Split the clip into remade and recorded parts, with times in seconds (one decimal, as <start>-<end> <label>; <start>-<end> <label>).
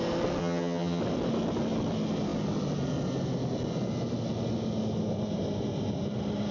0.0-0.4 recorded; 0.4-1.0 remade; 1.0-6.5 recorded